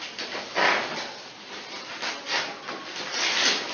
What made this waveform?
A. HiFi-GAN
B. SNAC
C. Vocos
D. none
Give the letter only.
D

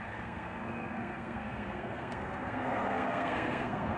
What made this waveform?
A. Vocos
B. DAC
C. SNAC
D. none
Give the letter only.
C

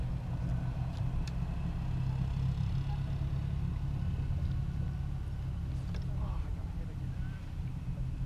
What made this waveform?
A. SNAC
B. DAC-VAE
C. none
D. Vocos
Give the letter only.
C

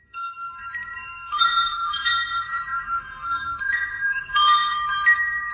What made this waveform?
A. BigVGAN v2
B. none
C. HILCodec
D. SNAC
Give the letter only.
D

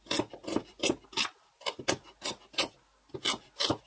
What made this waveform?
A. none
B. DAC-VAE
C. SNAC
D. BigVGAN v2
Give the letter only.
A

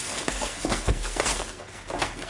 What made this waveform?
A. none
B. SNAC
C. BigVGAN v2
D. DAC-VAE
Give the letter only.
B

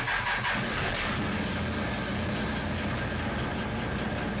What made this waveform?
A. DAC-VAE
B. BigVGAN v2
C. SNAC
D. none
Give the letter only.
D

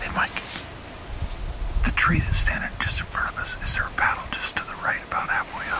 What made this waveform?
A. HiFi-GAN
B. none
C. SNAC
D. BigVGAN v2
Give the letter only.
B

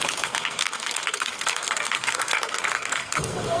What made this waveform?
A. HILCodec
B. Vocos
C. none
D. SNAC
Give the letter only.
D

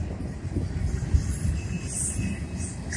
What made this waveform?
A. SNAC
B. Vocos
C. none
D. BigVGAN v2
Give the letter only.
C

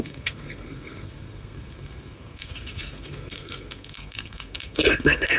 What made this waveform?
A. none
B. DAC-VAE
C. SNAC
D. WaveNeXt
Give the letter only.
C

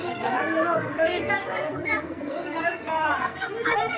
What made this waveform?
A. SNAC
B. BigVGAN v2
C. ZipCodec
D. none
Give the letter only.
A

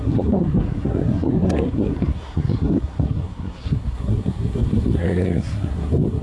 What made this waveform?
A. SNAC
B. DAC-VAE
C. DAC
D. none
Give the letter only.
A